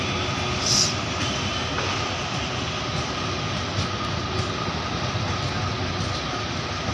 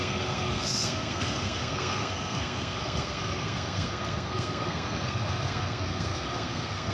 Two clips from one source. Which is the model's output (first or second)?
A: second